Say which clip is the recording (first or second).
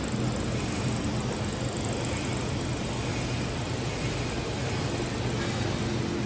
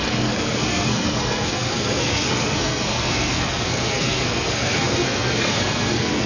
first